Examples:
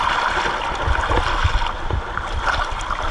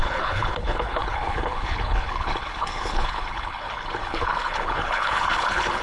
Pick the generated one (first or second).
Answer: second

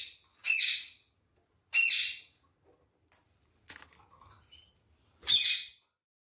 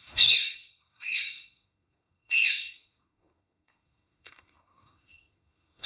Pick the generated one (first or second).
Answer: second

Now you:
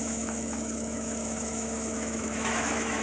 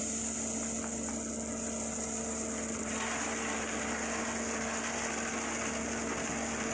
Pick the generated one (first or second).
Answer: first